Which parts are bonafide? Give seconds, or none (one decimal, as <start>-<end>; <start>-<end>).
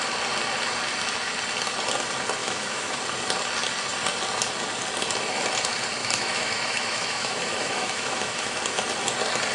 0.0-2.4; 3.0-6.0; 8.6-9.5